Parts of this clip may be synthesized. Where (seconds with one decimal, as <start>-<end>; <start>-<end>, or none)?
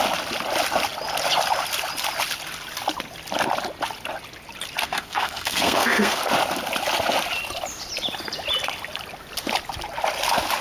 4.8-6.2